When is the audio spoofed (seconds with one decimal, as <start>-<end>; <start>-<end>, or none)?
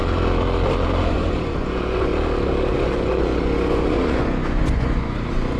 1.1-2.1; 2.7-5.6